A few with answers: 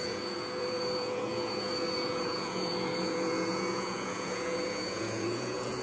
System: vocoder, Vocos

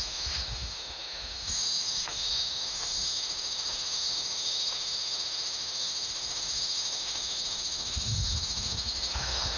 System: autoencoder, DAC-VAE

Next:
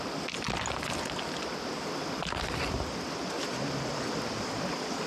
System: none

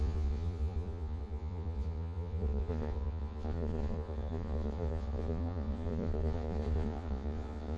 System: vocoder, Vocos